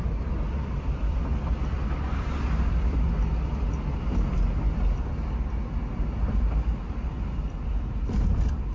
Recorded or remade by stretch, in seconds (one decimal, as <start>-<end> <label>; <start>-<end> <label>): 0.0-8.7 recorded